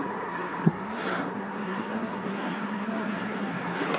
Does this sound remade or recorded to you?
remade